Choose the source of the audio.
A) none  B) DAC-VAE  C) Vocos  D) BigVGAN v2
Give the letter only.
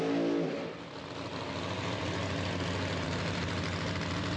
A